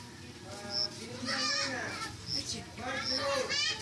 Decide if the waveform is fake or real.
real